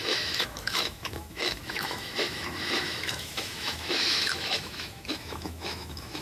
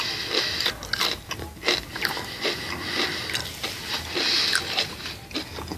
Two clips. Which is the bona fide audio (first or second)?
second